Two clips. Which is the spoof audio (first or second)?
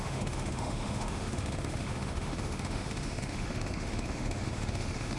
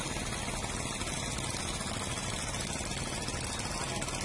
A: first